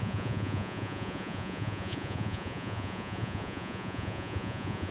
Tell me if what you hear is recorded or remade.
remade